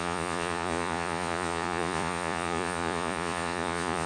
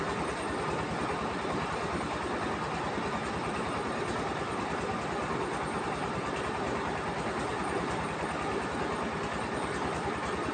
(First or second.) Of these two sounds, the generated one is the first